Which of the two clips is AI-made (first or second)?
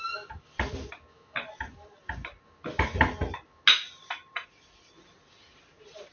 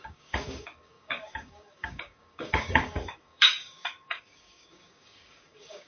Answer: second